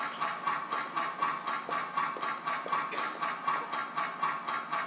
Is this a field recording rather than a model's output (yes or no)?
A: yes